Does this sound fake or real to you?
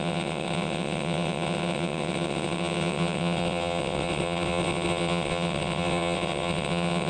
fake